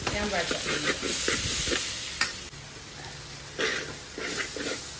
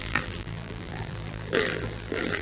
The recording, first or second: first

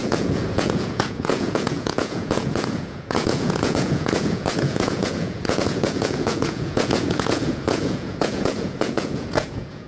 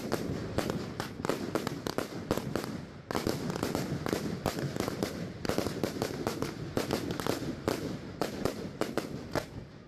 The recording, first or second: second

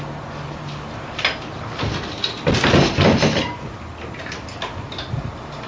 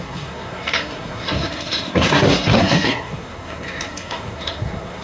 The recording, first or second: first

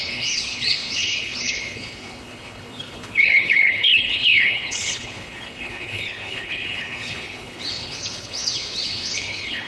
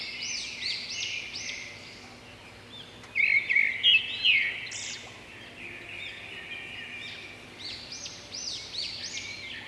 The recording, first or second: second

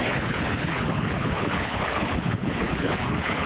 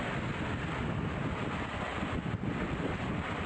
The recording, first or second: second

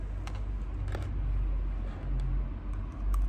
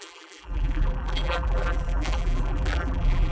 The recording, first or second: first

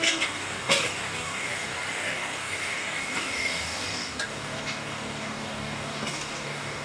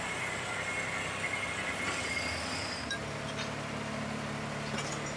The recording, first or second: second